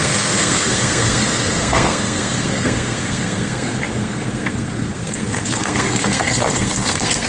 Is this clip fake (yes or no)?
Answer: yes